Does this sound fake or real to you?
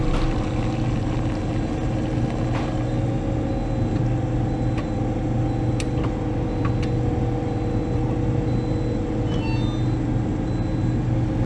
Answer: real